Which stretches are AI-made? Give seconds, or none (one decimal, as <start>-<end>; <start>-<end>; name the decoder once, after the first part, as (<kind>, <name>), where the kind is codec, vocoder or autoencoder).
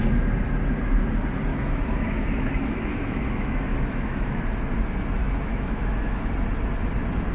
1.5-4.4 (autoencoder, DAC-VAE); 5.2-6.3